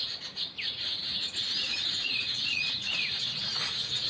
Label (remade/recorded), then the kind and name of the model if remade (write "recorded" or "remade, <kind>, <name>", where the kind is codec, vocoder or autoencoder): remade, vocoder, Vocos